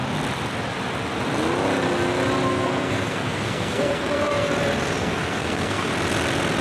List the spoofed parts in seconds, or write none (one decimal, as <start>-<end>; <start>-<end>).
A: 2.5-4.5; 5.0-5.9